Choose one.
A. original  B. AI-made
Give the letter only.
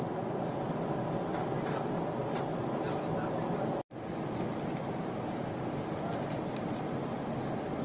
A